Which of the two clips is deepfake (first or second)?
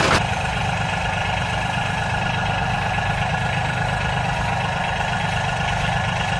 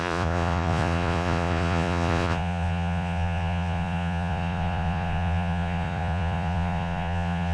second